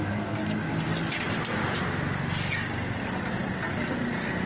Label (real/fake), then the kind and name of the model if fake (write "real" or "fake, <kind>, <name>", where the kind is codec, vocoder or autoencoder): real